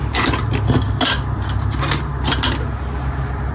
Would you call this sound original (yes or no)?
yes